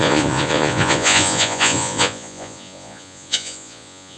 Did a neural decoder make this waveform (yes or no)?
yes